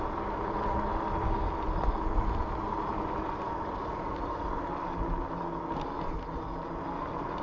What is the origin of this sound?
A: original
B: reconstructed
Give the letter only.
A